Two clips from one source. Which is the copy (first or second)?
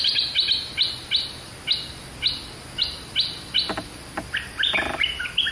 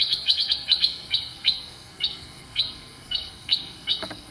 second